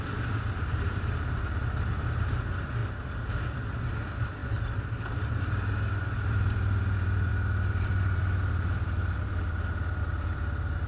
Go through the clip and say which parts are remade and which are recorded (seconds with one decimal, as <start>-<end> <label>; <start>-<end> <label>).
0.0-1.6 remade; 1.6-2.2 recorded; 2.2-2.8 remade; 2.8-3.5 recorded; 3.5-10.9 remade